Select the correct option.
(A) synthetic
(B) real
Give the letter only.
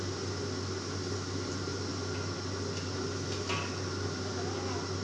B